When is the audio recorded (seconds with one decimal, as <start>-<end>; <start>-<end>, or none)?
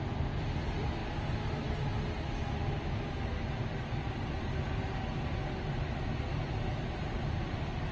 0.0-7.9